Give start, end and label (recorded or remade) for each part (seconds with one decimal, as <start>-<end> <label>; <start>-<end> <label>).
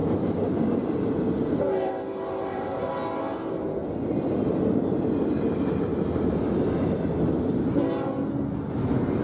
0.0-2.9 remade; 2.9-9.2 recorded